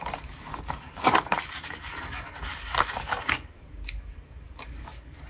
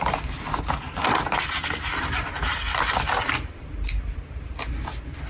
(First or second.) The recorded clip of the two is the second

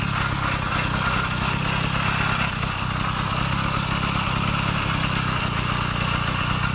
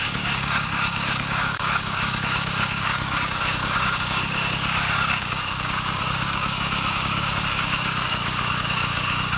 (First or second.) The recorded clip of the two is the first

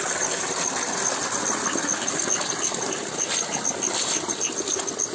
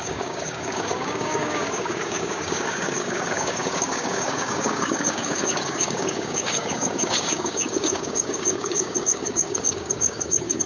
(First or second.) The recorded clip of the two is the first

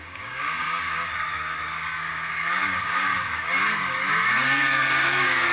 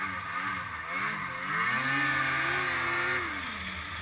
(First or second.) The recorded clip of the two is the second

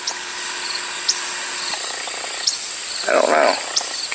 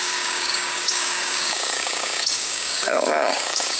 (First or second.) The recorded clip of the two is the first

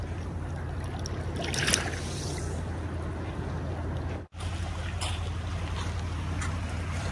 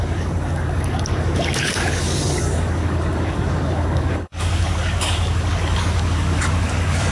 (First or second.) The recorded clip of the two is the first